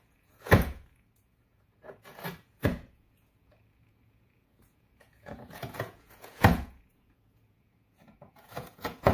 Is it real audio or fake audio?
fake